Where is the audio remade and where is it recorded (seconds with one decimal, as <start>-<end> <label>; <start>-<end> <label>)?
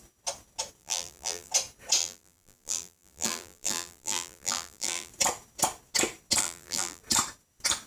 0.0-0.8 recorded; 0.8-1.5 remade; 1.5-2.0 recorded; 2.0-5.1 remade; 5.1-6.4 recorded; 6.4-7.0 remade; 7.0-7.9 recorded